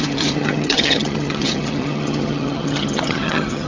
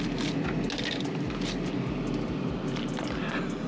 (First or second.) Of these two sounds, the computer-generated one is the first